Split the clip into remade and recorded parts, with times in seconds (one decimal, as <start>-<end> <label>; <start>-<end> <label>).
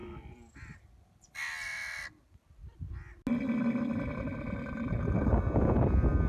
0.0-6.3 recorded